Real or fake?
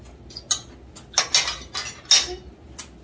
real